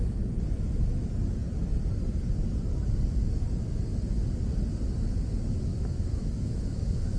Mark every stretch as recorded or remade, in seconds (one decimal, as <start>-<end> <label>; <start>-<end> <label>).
0.0-5.7 recorded; 5.7-7.2 remade